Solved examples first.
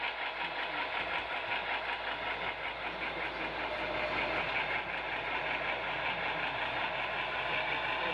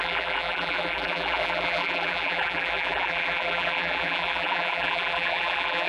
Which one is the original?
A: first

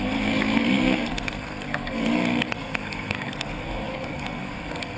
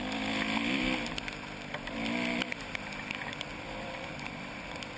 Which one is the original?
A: second